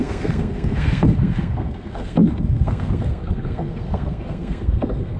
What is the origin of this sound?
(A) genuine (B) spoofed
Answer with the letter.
B